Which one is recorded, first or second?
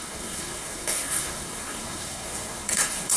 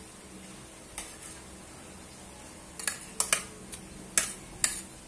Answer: second